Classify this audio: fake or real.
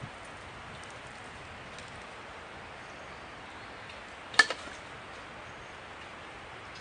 real